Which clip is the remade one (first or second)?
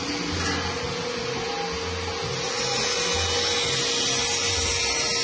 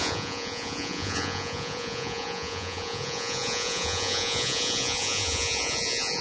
second